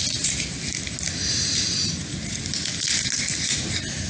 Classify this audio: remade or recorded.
recorded